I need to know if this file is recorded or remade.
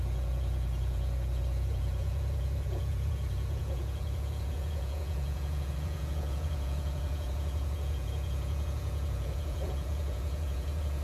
remade